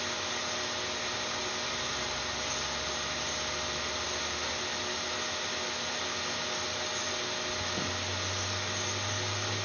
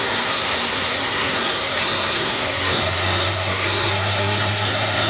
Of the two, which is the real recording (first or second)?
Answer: first